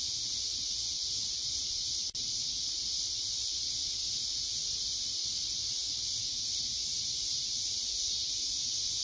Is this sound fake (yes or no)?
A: no